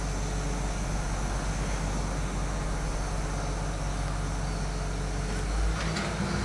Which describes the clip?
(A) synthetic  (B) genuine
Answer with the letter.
B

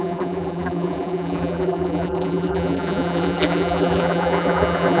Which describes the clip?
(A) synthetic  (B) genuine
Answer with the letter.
A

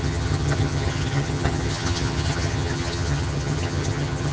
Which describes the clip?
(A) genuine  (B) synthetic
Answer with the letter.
B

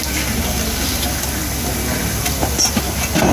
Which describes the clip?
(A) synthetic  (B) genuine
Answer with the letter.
B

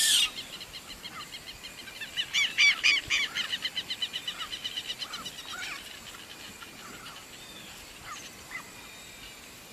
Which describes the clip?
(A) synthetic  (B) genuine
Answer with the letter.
B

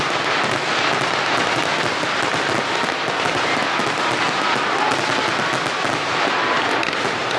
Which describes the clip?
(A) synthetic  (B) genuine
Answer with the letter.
B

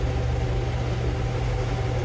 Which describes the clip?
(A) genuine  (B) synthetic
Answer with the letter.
A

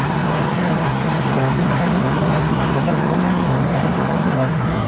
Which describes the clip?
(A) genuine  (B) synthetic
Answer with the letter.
B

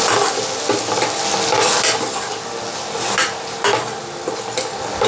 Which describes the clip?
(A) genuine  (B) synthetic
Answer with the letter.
A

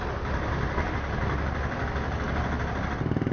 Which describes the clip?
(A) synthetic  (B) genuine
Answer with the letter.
B